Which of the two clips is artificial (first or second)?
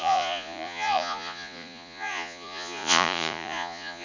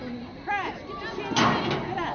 first